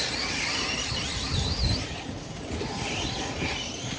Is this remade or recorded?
recorded